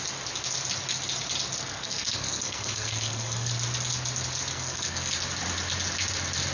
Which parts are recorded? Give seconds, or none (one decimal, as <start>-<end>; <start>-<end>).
0.0-1.6; 3.5-4.5; 5.1-6.5